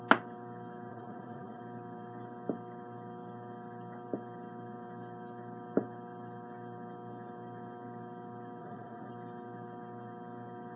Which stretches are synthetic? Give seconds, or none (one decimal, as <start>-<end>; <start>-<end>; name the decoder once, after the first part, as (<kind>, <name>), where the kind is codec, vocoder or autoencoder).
0.9-1.6 (vocoder, Vocos); 8.6-9.1

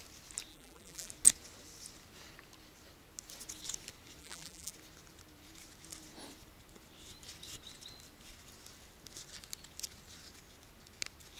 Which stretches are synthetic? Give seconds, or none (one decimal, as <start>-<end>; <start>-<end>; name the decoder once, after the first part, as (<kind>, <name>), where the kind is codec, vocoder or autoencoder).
0.5-1.1 (vocoder, BigVGAN v2); 4.2-4.7